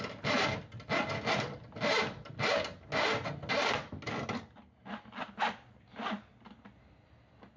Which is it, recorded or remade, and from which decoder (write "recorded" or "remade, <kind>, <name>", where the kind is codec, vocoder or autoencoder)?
recorded